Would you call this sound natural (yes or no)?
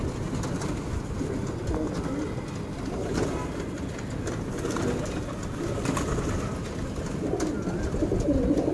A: yes